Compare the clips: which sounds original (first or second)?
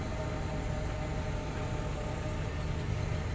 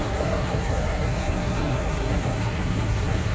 first